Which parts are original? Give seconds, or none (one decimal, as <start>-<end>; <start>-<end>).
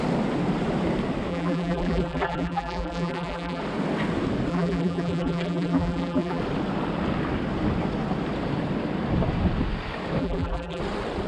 0.0-1.3; 3.6-4.5; 6.4-10.2; 10.8-11.3